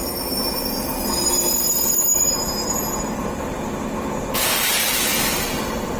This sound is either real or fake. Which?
fake